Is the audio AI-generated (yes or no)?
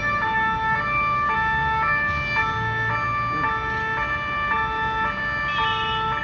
no